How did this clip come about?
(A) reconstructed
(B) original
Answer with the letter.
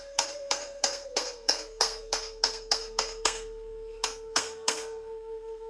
A